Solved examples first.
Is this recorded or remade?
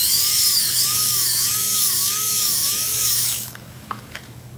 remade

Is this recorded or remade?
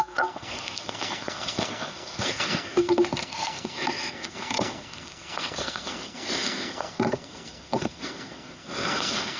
remade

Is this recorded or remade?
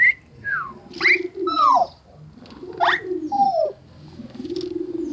recorded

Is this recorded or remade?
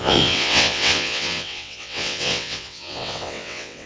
remade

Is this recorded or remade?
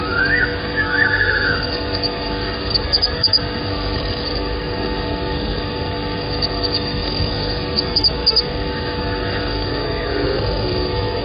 remade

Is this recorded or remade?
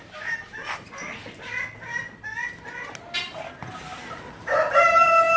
recorded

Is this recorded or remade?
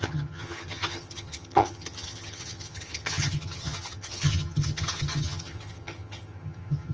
remade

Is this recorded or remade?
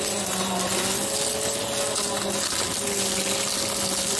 recorded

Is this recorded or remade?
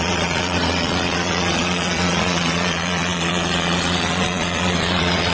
remade